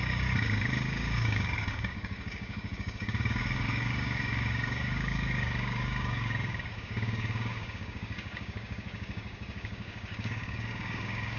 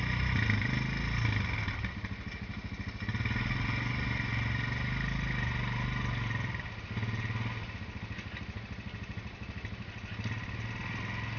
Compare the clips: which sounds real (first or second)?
second